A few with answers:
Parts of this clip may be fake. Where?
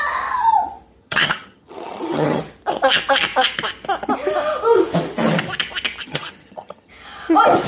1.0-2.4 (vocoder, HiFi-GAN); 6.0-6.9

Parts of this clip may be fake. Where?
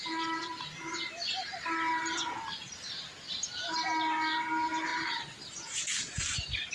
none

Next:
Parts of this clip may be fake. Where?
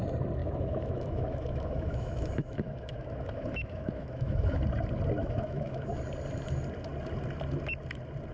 0.4-4.6 (autoencoder, DAC-VAE); 5.2-5.9